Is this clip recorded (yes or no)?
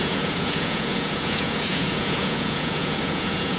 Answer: no